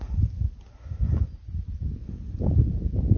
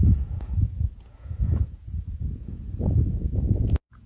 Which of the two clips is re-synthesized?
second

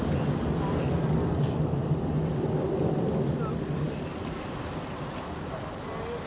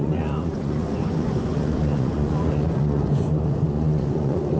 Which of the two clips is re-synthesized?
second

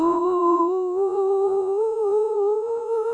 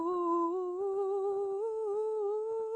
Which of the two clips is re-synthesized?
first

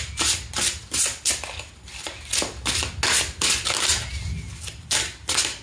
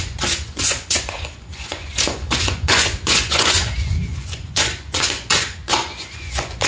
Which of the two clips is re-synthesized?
second